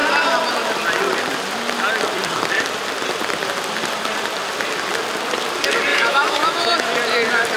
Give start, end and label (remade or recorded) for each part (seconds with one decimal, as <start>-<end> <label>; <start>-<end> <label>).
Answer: 0.0-5.9 recorded; 5.9-6.7 remade; 6.7-7.6 recorded